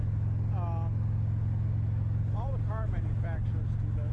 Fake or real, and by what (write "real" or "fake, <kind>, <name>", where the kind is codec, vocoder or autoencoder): real